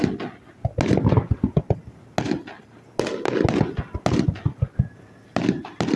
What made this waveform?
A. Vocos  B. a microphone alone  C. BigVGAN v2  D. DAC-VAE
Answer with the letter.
B